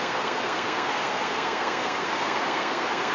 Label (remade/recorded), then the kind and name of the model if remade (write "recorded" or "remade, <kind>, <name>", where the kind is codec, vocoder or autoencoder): remade, codec, SNAC